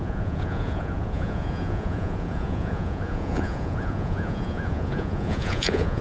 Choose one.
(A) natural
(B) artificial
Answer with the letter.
B